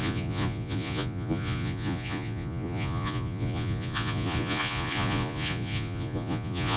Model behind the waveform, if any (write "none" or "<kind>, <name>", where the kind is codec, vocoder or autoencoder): vocoder, Vocos